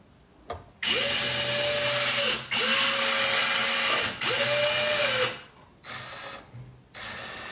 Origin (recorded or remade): recorded